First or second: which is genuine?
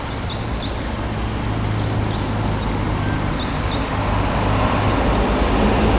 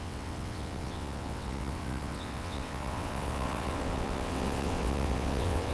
first